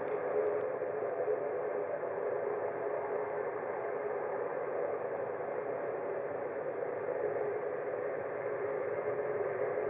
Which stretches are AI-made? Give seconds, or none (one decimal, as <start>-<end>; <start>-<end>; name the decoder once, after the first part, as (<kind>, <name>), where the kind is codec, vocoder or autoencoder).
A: 0.0-7.1 (vocoder, BigVGAN v2)